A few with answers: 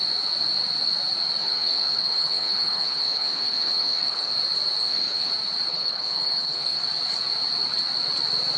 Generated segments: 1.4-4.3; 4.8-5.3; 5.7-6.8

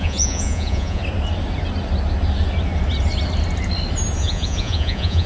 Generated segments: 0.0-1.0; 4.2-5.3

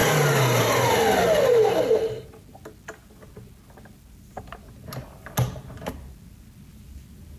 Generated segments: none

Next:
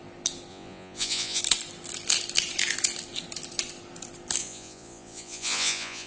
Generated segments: 0.5-1.4; 4.4-6.1

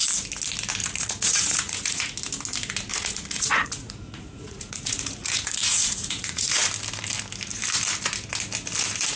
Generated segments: 0.8-2.0; 2.9-6.6

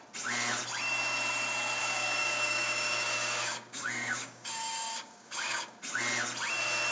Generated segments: 1.8-5.8